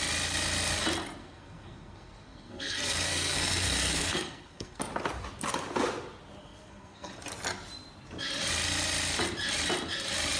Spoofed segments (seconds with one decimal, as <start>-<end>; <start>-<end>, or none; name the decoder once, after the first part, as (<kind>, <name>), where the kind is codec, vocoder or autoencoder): 1.2-4.8 (codec, SNAC); 6.4-7.1